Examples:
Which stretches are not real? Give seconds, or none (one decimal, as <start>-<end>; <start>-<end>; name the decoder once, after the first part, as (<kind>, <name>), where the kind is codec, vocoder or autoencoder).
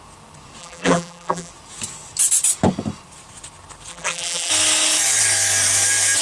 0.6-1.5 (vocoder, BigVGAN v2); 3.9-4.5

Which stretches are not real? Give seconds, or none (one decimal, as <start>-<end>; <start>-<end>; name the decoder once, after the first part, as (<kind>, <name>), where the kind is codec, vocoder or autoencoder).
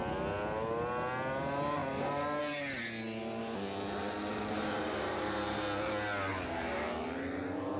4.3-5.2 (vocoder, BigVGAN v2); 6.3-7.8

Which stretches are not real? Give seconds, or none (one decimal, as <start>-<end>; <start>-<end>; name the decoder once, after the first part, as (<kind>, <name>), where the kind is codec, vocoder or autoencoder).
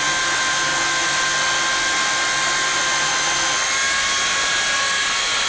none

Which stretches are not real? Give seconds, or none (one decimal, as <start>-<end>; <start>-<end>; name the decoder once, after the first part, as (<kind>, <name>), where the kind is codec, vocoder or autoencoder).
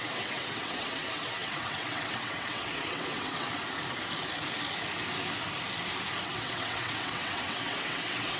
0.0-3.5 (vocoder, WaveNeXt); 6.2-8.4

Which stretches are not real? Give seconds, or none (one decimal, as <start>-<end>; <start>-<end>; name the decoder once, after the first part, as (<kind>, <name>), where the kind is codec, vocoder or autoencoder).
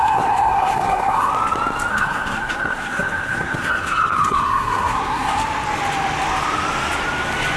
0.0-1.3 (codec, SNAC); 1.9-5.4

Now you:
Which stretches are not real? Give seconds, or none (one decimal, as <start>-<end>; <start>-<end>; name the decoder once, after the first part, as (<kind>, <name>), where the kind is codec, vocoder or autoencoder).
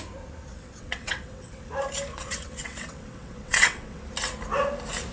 0.5-1.7 (vocoder, WaveNeXt); 2.1-4.0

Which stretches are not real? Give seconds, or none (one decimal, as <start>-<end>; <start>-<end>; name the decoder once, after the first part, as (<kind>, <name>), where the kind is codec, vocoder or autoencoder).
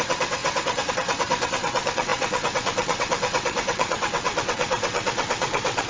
0.0-5.9 (vocoder, WaveNeXt)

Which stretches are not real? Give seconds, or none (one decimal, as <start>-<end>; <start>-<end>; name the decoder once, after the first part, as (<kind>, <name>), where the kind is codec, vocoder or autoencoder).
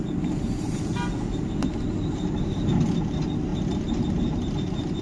none